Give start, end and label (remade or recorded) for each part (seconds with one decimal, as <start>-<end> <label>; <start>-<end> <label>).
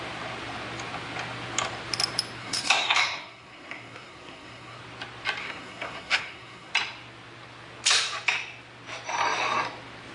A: 0.0-2.4 recorded; 2.4-4.8 remade; 4.8-5.4 recorded; 5.4-6.7 remade; 6.7-10.1 recorded